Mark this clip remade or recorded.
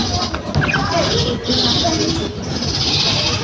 recorded